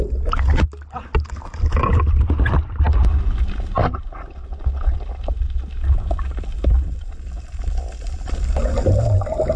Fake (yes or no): no